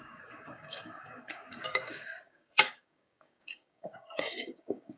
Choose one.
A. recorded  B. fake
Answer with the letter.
B